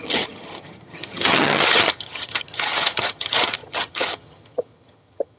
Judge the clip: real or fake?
fake